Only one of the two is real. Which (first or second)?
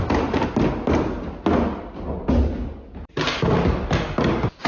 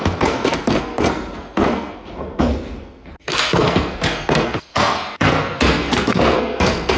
first